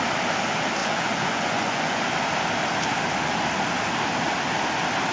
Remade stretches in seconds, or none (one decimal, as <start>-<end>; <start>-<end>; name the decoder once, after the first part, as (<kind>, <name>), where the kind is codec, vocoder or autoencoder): 0.8-2.0 (vocoder, Vocos)